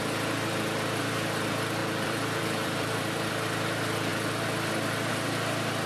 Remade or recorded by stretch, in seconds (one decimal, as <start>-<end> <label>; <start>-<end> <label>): 0.0-1.8 recorded; 1.8-3.3 remade; 3.3-5.9 recorded